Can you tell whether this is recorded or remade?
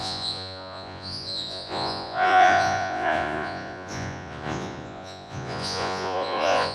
remade